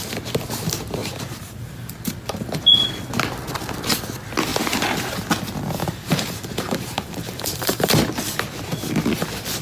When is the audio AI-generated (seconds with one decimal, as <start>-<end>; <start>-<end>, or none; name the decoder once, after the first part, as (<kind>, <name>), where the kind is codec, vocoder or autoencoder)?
1.0-2.6 (vocoder, BigVGAN v2); 5.8-8.0

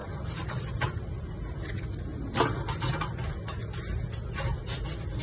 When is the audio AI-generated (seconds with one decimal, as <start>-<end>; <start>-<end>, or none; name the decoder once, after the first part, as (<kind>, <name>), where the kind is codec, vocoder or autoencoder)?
0.0-0.8 (vocoder, BigVGAN v2)

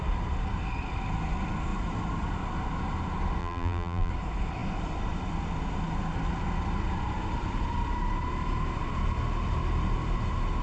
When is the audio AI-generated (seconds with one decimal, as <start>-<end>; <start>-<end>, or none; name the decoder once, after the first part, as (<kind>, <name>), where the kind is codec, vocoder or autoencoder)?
3.4-4.1 (vocoder, BigVGAN v2)

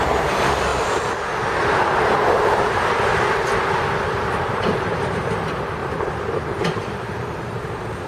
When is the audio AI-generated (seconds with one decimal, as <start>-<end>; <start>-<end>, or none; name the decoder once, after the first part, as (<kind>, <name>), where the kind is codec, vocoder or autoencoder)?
0.0-0.7 (vocoder, BigVGAN v2); 2.4-3.1; 4.5-5.8; 6.6-8.1

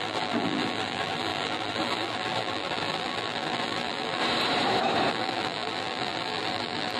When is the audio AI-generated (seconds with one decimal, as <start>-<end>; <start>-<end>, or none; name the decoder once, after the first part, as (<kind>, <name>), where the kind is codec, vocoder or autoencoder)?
0.0-4.2 (vocoder, BigVGAN v2); 5.1-7.0